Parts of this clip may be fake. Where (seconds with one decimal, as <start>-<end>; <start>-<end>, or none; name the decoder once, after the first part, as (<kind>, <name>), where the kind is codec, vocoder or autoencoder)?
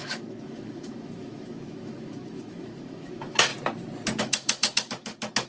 0.0-3.5 (autoencoder, DAC-VAE); 4.2-5.5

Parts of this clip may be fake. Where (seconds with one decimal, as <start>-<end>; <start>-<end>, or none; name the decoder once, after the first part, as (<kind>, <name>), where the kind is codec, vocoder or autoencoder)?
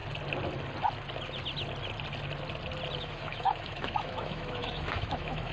3.0-5.5 (autoencoder, DAC-VAE)